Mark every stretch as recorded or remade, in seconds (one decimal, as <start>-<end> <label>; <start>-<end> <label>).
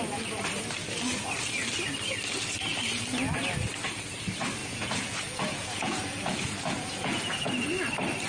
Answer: 0.0-4.6 recorded; 4.6-7.5 remade; 7.5-8.3 recorded